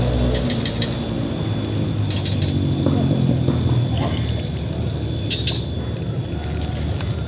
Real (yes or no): yes